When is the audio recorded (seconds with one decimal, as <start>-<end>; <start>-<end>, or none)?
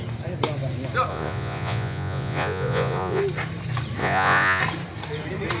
0.0-1.1; 3.2-4.0; 4.6-5.6